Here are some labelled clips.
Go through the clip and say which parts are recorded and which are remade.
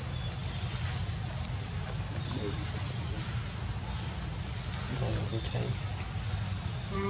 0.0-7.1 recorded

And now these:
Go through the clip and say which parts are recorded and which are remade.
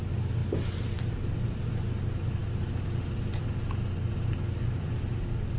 0.0-5.6 recorded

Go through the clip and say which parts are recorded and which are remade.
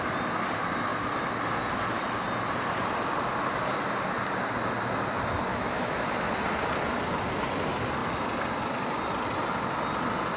0.0-5.5 recorded; 5.5-6.3 remade; 6.3-10.4 recorded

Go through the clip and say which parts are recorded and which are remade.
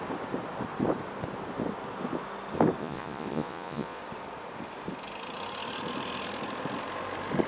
0.0-2.8 recorded; 2.8-4.0 remade; 4.0-7.5 recorded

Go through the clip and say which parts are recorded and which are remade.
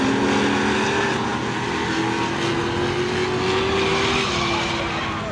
0.0-5.3 recorded